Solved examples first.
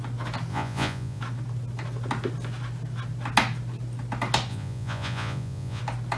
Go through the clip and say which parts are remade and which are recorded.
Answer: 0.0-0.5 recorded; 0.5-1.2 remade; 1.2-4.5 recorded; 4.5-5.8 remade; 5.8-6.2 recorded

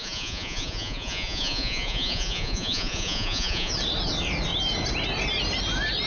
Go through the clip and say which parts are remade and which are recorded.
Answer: 0.0-3.7 remade; 3.7-6.1 recorded

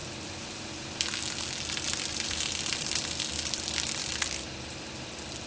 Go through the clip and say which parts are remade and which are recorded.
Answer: 0.0-5.5 recorded

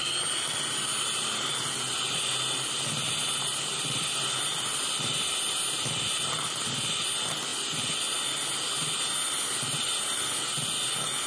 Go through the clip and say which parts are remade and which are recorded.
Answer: 0.0-11.3 recorded

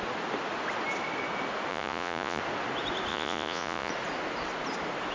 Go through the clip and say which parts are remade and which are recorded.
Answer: 0.0-1.7 recorded; 1.7-2.4 remade; 2.4-3.1 recorded; 3.1-3.9 remade; 3.9-5.1 recorded

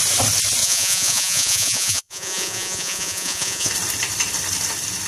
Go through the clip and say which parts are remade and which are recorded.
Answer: 0.0-0.6 recorded; 0.6-3.7 remade; 3.7-5.1 recorded

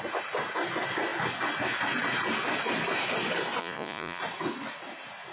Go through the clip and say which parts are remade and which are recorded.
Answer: 0.0-3.6 recorded; 3.6-4.2 remade; 4.2-5.3 recorded

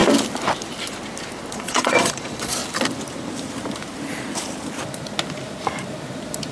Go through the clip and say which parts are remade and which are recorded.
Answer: 0.0-1.5 recorded; 1.5-2.6 remade; 2.6-6.5 recorded